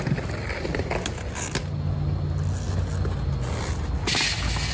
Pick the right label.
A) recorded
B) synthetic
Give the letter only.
A